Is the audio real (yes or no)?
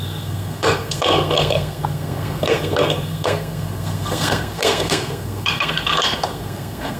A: no